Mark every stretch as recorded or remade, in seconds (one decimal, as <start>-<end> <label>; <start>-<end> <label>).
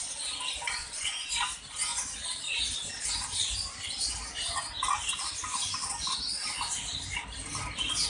0.0-0.8 recorded; 0.8-1.3 remade; 1.3-8.1 recorded